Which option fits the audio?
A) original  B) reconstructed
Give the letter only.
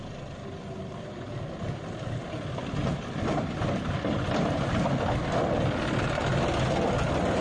A